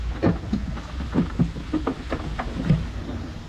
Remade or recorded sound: recorded